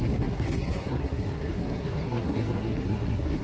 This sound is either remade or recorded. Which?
remade